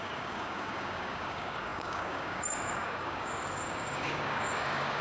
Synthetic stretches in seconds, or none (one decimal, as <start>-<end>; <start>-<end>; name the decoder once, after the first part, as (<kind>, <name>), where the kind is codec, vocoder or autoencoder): 0.0-5.0 (codec, DAC)